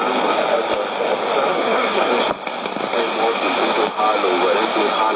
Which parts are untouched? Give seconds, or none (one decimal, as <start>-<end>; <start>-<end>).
0.0-1.5; 2.1-5.2